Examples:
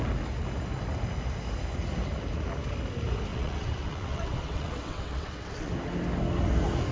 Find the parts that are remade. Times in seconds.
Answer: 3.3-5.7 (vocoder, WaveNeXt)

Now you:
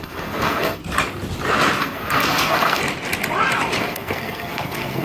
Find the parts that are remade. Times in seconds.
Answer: 0.0-0.8 (codec, SNAC); 1.8-2.8; 3.8-5.0

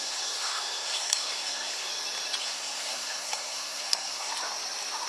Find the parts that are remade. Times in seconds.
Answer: 0.0-1.9 (codec, SNAC); 2.4-4.3

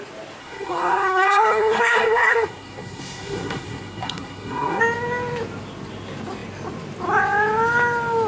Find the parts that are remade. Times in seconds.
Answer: 0.4-4.8 (codec, SNAC)

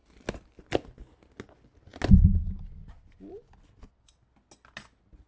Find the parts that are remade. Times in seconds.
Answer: none